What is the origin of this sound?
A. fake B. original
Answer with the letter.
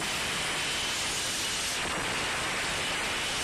B